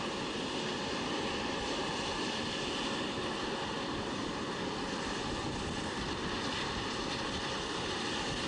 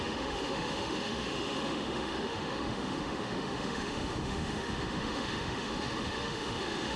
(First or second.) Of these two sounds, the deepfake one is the second